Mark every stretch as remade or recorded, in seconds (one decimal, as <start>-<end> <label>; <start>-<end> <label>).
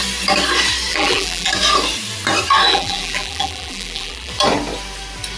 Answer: 0.0-0.9 recorded; 0.9-1.5 remade; 1.5-2.7 recorded; 2.7-4.3 remade; 4.3-5.4 recorded